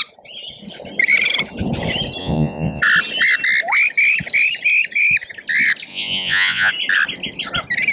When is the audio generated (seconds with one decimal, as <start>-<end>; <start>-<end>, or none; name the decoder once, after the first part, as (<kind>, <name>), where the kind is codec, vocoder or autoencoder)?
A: 2.2-2.8 (vocoder, Vocos); 5.9-6.7